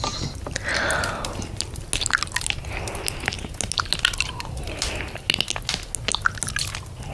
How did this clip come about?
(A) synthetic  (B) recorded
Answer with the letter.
B